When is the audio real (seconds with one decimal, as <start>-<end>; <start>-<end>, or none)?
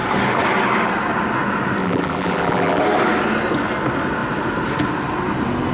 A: 0.0-1.8; 2.8-5.7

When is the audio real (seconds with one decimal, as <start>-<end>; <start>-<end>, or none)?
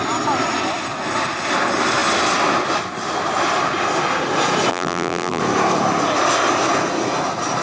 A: 0.0-4.7; 5.4-7.6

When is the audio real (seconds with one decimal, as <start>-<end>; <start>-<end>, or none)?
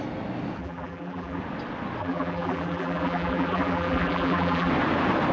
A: 0.0-0.6; 1.4-2.0; 4.7-5.3